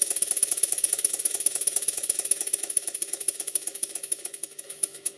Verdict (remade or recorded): remade